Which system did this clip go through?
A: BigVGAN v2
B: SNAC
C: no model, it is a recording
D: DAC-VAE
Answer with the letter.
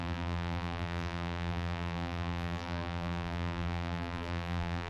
A